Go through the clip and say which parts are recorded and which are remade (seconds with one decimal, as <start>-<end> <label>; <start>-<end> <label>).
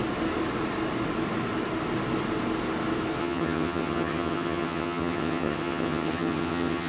0.0-3.2 recorded; 3.2-6.9 remade